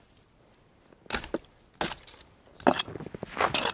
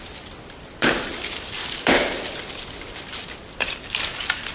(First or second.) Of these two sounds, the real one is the first